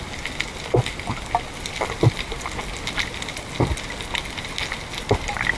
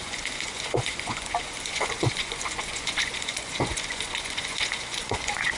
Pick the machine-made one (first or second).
second